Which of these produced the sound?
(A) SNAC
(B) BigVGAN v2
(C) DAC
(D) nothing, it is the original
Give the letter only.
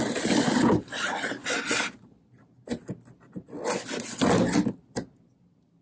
D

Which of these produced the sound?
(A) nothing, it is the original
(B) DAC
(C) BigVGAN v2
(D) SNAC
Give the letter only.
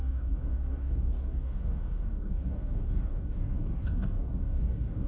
B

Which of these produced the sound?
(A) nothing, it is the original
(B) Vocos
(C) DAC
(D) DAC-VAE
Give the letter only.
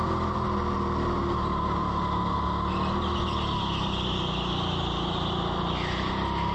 A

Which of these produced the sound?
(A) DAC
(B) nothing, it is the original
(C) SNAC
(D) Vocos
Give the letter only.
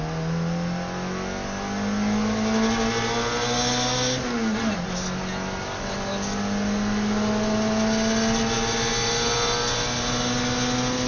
B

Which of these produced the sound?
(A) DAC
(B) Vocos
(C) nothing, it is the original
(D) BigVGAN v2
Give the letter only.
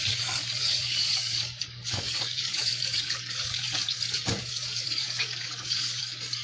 A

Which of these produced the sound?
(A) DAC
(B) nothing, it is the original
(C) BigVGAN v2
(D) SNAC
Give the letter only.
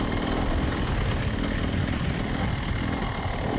B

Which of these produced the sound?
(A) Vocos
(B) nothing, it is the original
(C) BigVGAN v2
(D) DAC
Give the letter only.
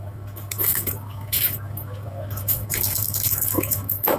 D